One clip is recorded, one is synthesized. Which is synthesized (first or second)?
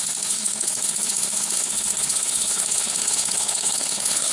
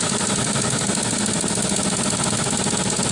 first